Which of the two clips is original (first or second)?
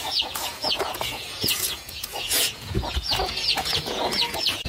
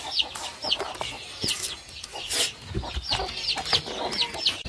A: second